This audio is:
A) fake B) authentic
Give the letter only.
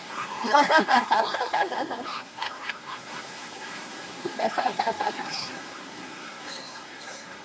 A